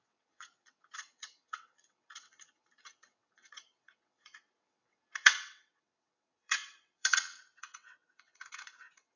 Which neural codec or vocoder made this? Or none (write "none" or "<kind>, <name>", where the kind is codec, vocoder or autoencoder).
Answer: vocoder, WaveNeXt